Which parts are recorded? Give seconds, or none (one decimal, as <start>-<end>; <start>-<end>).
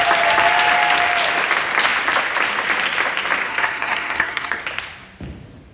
0.0-3.5; 4.6-5.7